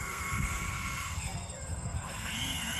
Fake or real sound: fake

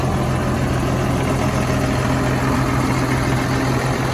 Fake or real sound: real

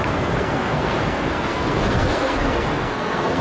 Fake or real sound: fake